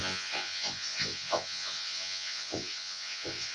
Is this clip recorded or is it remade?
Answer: remade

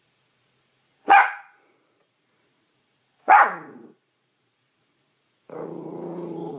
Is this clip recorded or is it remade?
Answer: remade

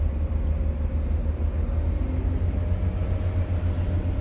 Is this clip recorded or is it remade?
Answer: recorded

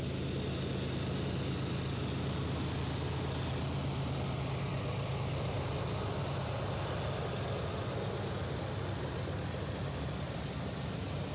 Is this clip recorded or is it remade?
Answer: recorded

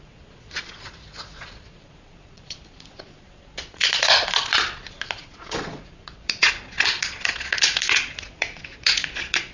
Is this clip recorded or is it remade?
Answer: remade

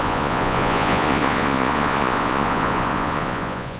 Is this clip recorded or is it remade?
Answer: remade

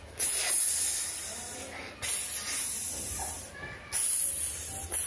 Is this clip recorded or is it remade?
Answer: recorded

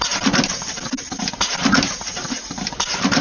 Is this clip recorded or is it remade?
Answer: recorded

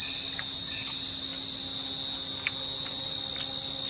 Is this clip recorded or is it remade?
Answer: recorded